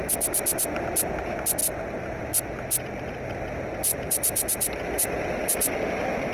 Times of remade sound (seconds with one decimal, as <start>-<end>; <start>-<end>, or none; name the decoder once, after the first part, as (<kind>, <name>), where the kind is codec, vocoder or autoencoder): 3.9-5.7 (vocoder, BigVGAN v2)